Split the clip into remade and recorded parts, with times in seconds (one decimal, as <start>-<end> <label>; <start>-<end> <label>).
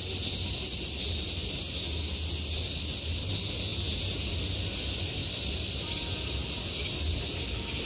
0.0-3.7 recorded; 3.7-4.3 remade; 4.3-7.9 recorded